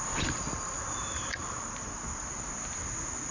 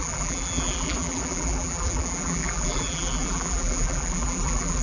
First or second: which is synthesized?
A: second